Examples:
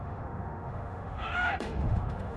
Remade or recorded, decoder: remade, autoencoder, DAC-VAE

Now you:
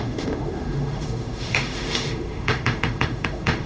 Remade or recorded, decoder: remade, autoencoder, DAC-VAE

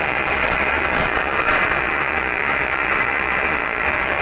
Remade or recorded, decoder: remade, vocoder, Vocos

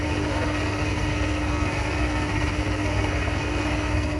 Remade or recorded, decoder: remade, codec, SNAC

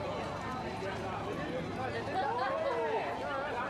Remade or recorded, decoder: recorded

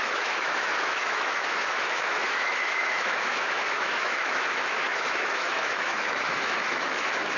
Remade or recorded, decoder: remade, autoencoder, DAC-VAE